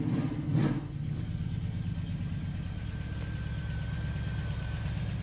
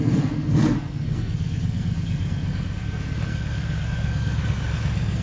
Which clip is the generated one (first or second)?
second